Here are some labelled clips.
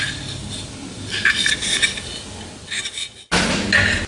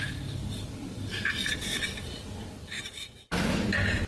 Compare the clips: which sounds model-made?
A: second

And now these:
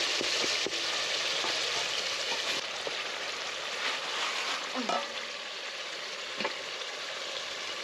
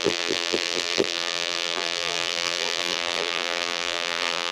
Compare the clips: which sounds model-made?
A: second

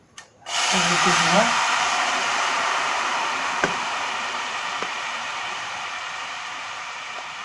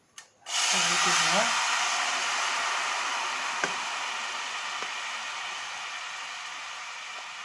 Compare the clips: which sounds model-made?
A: first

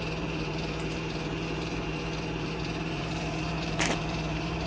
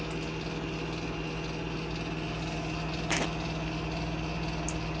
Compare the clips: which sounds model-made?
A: first